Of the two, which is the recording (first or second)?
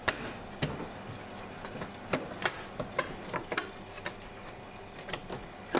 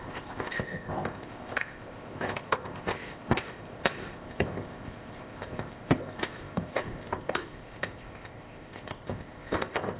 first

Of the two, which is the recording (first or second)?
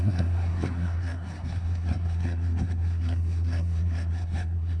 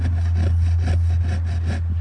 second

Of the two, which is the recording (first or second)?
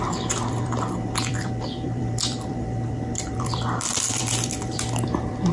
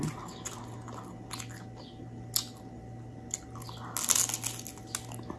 second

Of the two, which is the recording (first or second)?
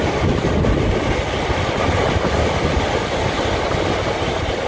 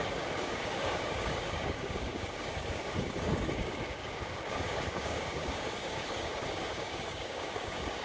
first